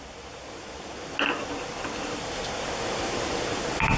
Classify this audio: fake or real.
real